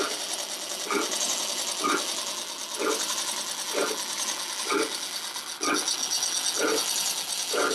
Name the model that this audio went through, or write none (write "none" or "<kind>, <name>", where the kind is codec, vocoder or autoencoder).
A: none